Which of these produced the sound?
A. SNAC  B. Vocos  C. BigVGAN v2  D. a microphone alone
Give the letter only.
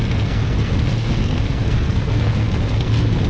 A